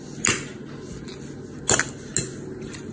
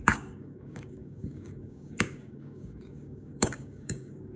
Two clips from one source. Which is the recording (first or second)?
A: first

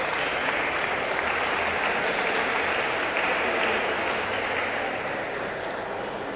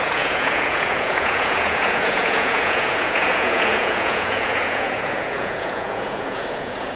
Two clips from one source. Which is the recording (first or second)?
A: first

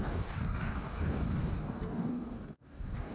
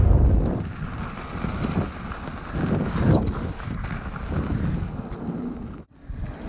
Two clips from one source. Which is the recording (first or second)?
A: second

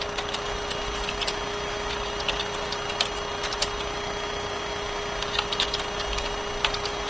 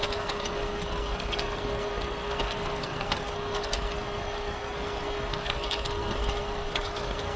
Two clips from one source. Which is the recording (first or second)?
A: first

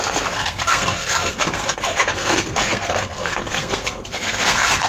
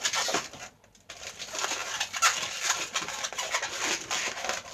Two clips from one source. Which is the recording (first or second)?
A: second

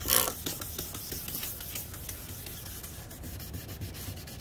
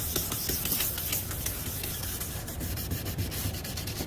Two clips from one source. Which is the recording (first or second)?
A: first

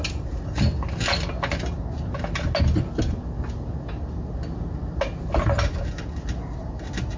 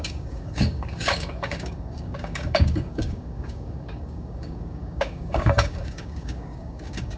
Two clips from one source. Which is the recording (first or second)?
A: first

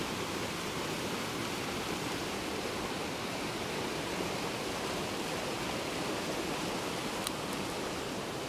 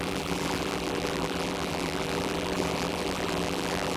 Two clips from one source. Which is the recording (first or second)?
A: first